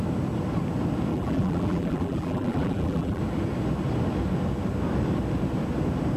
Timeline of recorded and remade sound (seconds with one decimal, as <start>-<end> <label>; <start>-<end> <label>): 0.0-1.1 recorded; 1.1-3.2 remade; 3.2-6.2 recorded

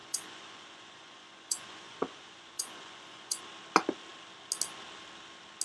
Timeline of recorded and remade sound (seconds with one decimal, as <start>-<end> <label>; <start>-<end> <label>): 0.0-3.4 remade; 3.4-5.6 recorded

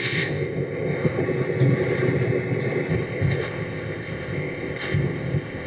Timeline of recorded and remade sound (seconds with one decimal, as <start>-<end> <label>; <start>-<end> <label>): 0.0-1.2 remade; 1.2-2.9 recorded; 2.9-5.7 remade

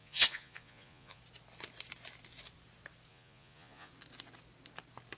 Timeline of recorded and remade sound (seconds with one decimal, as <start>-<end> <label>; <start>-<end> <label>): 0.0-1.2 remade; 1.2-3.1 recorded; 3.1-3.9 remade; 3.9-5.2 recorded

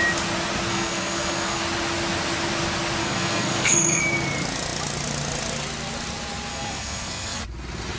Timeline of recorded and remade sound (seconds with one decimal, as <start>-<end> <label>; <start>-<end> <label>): 0.0-0.7 recorded; 0.7-1.6 remade; 1.6-3.0 recorded; 3.0-4.0 remade; 4.0-6.5 recorded; 6.5-7.4 remade; 7.4-8.0 recorded

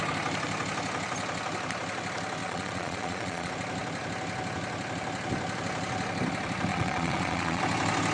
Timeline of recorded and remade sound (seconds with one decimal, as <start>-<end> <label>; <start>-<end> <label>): 0.0-2.4 recorded; 2.4-3.5 remade; 3.5-6.7 recorded; 6.7-7.6 remade; 7.6-8.1 recorded